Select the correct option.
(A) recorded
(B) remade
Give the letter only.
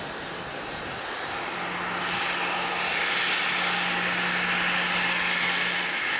A